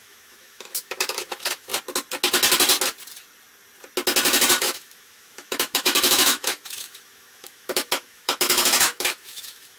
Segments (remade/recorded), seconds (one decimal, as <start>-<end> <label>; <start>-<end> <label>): 0.0-1.7 remade; 1.7-4.6 recorded; 4.6-9.8 remade